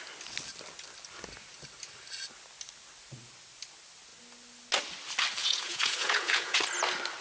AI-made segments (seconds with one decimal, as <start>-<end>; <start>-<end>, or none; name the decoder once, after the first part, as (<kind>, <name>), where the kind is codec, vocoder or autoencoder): 5.4-6.6 (vocoder, Vocos)